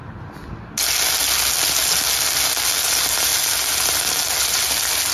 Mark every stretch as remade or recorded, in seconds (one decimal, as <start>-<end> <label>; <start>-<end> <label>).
0.0-5.1 recorded